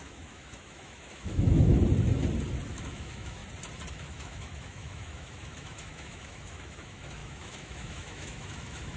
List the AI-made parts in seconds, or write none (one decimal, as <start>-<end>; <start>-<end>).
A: 0.0-1.7; 2.7-3.4; 3.9-9.0